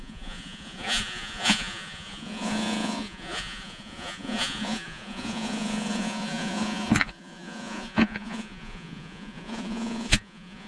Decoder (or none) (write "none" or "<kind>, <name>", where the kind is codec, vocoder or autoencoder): vocoder, Vocos